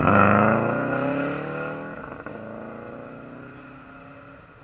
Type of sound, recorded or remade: recorded